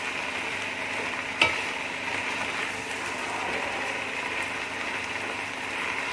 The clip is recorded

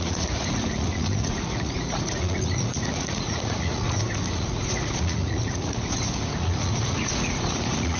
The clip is remade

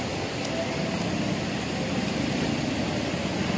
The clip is recorded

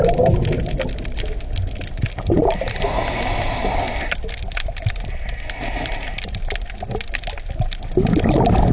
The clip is recorded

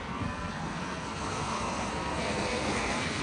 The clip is remade